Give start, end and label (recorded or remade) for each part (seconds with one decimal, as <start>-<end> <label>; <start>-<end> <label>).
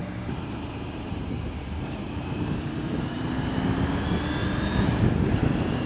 0.0-3.5 remade; 3.5-4.4 recorded; 4.4-5.5 remade; 5.5-5.9 recorded